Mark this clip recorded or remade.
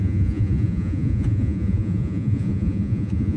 remade